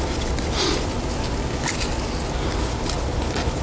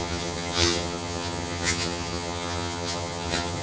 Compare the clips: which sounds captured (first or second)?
first